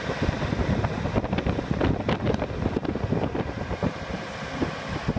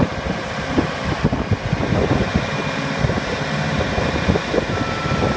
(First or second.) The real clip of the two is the first